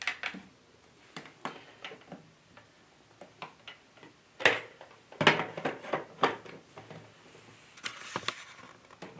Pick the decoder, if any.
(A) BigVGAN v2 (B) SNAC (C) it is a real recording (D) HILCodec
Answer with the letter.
C